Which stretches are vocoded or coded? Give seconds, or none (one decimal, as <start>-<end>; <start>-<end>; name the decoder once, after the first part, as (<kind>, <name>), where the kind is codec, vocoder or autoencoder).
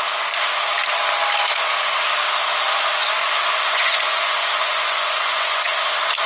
3.0-5.7 (vocoder, Vocos)